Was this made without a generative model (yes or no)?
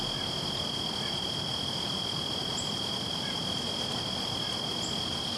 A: yes